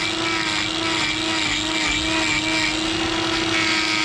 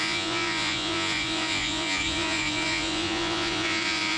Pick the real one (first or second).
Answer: first